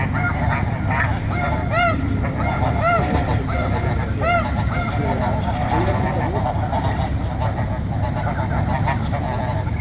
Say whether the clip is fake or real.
real